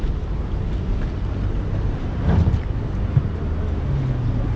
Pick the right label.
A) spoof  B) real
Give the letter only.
B